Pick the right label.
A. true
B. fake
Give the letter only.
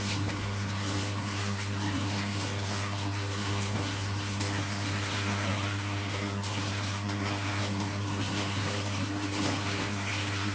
B